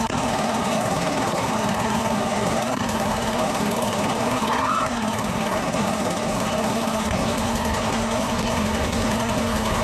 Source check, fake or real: fake